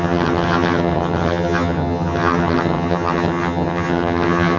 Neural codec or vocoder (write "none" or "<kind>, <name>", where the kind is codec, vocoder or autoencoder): vocoder, HiFi-GAN